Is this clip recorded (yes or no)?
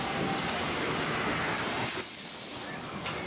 yes